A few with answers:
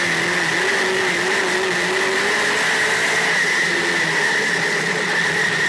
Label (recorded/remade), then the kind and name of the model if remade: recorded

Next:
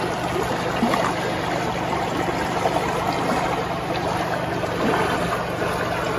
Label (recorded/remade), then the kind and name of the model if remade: recorded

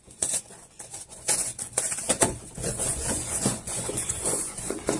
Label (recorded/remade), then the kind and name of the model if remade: remade, vocoder, Vocos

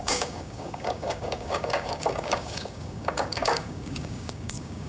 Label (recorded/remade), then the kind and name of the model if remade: remade, codec, DAC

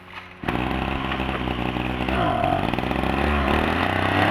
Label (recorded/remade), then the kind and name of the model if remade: recorded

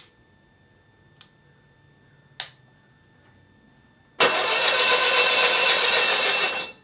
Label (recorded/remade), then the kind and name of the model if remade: recorded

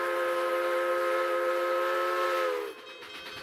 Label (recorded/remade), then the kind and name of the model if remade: recorded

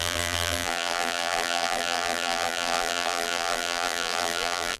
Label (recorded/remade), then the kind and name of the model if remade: remade, vocoder, BigVGAN v2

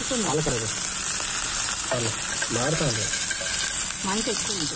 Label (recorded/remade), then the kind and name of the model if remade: recorded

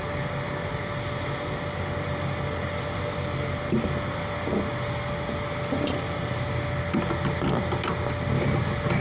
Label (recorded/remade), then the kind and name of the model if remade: recorded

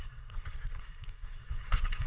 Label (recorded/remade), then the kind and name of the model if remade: remade, codec, SNAC